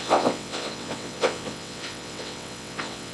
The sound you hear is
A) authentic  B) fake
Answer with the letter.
B